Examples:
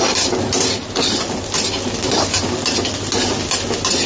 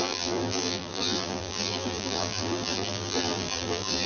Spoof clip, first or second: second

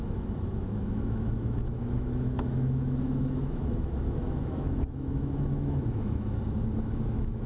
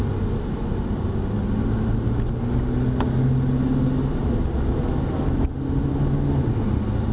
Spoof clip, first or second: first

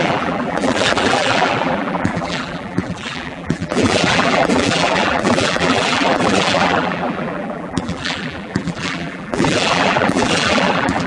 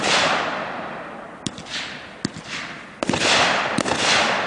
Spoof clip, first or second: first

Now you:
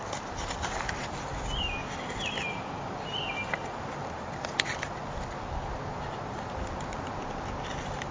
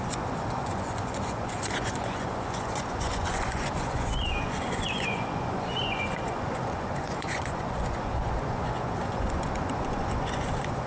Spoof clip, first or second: second